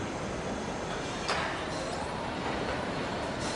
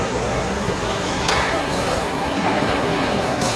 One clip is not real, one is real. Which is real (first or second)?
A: first